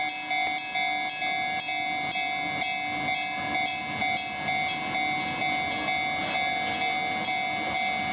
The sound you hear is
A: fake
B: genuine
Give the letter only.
B